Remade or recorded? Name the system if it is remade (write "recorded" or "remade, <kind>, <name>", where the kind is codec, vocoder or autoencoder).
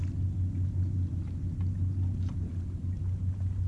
recorded